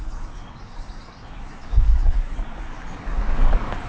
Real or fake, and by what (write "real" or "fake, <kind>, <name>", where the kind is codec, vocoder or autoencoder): fake, codec, DAC